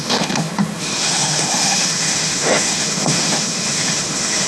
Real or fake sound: fake